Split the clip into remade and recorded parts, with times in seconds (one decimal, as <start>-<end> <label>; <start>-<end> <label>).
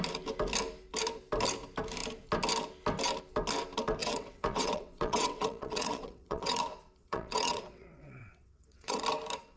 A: 0.0-4.0 recorded; 4.0-6.6 remade; 6.6-7.0 recorded; 7.0-9.0 remade; 9.0-9.6 recorded